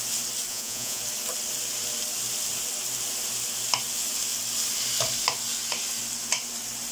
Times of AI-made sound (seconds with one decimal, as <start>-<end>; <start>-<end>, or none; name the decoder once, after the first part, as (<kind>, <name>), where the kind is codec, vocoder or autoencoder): 0.5-1.0 (vocoder, Vocos)